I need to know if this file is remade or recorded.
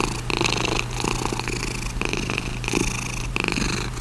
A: recorded